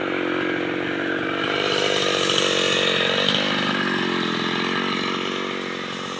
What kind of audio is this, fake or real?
real